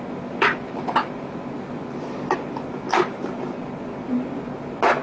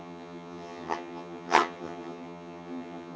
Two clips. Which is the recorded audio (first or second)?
first